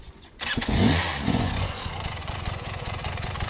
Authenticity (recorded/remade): remade